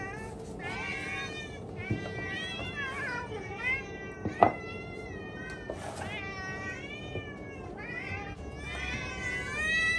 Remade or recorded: recorded